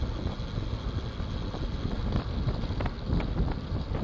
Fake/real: real